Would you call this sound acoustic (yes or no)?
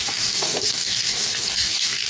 no